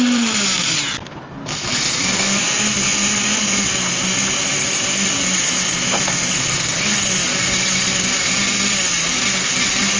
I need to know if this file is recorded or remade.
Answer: recorded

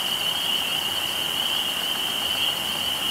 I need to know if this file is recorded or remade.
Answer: recorded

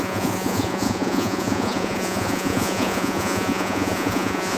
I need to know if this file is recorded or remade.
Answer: remade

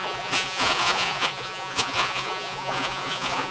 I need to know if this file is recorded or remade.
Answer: remade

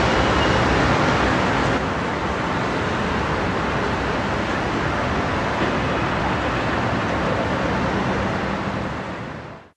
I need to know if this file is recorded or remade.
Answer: recorded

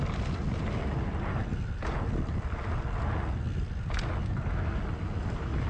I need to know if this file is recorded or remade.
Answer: recorded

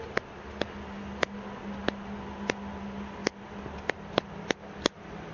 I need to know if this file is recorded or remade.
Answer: recorded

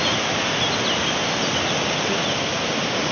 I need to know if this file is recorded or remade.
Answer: recorded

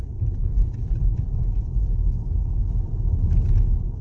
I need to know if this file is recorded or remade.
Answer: recorded